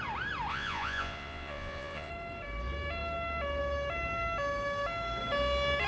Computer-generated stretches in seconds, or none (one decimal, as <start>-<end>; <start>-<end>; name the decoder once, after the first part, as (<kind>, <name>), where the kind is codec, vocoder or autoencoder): 0.5-2.1 (vocoder, Vocos)